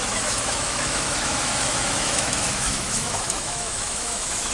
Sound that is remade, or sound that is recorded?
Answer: remade